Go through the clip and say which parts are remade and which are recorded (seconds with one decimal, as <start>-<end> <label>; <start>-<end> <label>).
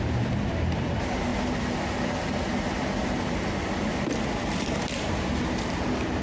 0.0-1.3 remade; 1.3-2.7 recorded; 2.7-6.2 remade